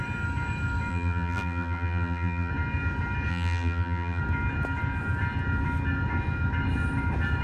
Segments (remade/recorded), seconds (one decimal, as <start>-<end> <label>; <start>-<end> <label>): 0.0-0.9 recorded; 0.9-2.5 remade; 2.5-3.3 recorded; 3.3-4.2 remade; 4.2-7.4 recorded